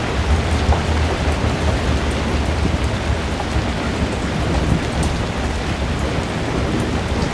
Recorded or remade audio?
recorded